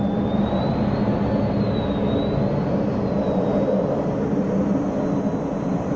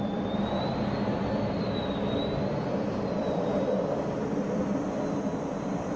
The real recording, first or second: first